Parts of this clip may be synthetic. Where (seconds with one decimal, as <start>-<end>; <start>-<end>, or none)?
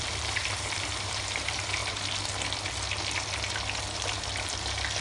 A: 0.0-1.8